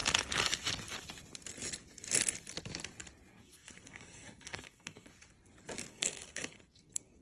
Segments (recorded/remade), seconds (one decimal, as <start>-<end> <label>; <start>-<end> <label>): 0.0-3.3 recorded; 3.3-5.1 remade; 5.1-5.9 recorded; 5.9-7.2 remade